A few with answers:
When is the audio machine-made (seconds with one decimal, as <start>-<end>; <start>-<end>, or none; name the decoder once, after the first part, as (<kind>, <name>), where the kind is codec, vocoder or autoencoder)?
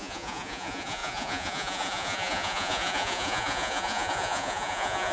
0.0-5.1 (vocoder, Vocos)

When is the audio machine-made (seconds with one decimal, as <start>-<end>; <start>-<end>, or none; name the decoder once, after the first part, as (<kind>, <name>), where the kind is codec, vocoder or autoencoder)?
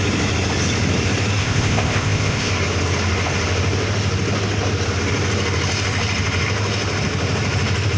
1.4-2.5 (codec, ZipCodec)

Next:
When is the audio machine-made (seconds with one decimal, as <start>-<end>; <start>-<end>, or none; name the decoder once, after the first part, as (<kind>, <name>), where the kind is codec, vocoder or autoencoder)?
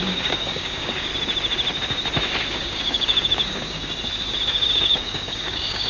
0.0-1.1 (codec, DAC); 2.6-3.8; 4.5-5.9